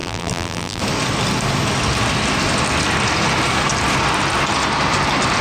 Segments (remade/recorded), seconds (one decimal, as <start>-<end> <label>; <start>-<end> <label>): 0.0-0.8 remade; 0.8-5.4 recorded